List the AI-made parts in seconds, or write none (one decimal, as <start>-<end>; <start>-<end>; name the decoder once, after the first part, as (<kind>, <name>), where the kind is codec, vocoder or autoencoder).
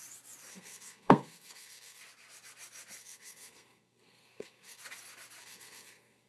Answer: 0.5-2.0 (codec, SNAC); 3.0-4.8; 5.4-6.3